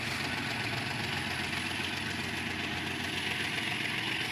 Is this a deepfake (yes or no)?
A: no